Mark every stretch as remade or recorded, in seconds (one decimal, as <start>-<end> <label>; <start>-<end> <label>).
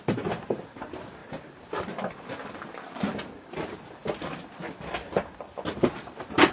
0.0-6.5 recorded